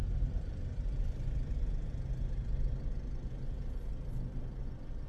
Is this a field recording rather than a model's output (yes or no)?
yes